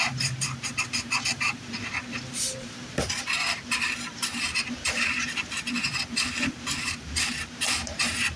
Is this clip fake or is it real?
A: fake